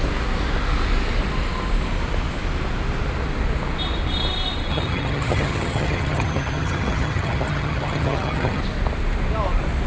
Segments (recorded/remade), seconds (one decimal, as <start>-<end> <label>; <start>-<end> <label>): 0.0-4.7 recorded; 4.7-8.6 remade; 8.6-9.9 recorded